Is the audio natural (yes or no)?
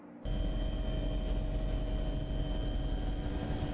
yes